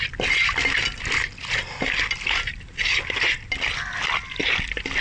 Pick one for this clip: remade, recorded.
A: recorded